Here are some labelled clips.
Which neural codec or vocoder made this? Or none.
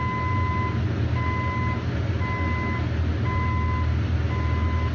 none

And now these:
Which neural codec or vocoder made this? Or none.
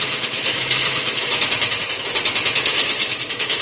autoencoder, DAC-VAE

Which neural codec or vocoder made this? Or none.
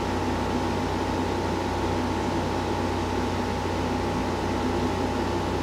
none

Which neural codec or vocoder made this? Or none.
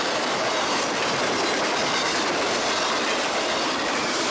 none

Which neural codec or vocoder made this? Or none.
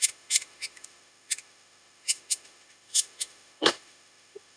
autoencoder, DAC-VAE